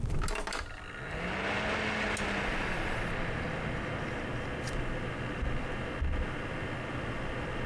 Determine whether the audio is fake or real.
real